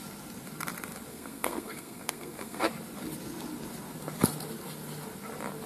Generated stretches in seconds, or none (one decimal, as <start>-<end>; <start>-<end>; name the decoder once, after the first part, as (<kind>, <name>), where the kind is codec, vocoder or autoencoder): 1.1-2.7 (codec, SNAC)

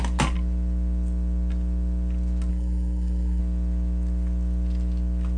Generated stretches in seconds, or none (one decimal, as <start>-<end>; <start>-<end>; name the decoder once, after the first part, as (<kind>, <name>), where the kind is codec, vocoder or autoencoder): 2.5-3.4 (codec, SNAC)

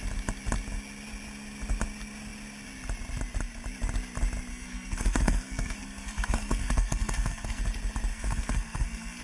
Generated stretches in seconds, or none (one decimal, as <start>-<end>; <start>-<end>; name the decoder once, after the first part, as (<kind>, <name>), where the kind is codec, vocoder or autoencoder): 4.5-7.6 (codec, SNAC); 8.1-9.2

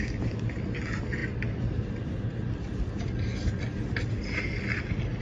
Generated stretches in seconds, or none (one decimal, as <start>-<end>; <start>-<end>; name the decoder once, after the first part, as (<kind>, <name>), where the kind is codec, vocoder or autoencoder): none

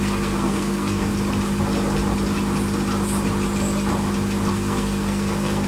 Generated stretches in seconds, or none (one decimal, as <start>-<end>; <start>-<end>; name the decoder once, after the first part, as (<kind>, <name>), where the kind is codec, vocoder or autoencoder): 0.0-1.1 (codec, SNAC); 4.5-5.7

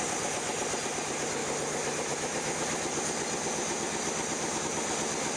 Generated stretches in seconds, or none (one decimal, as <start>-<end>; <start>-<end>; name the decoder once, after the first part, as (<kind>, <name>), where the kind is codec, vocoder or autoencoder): none

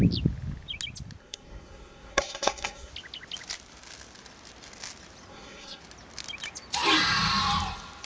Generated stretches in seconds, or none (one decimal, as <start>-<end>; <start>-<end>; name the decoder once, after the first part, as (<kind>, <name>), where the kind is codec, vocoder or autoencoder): 1.2-2.9 (codec, SNAC); 5.3-5.8